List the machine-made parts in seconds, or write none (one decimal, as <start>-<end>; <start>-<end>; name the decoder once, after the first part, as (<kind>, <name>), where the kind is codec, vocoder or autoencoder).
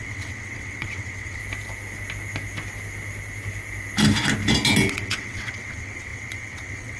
0.0-1.4 (vocoder, WaveNeXt); 4.9-7.0